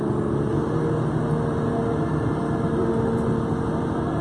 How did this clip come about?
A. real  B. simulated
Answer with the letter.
A